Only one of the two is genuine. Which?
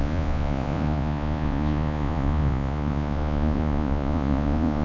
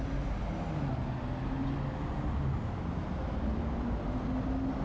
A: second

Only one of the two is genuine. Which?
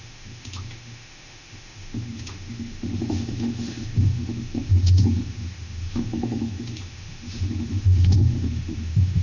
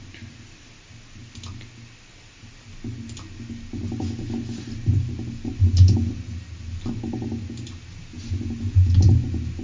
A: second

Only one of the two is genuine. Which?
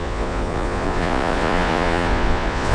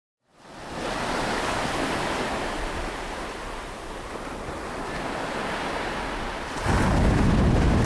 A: second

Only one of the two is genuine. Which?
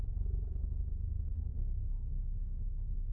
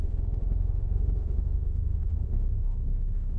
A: first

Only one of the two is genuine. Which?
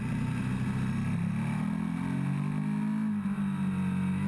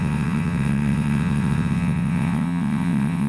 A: first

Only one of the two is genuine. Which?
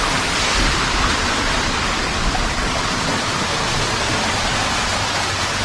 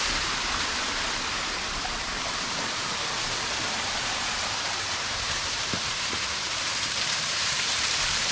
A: first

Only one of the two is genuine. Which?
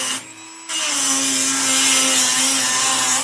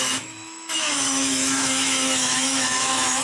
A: first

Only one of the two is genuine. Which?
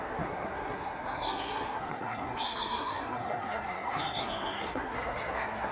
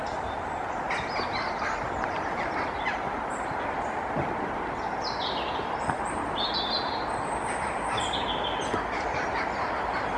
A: second